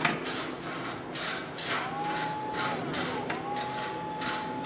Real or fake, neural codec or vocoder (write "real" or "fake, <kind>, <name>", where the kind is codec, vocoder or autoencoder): real